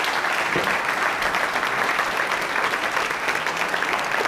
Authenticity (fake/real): real